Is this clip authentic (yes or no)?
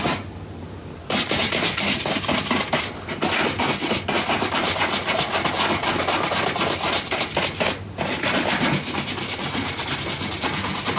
yes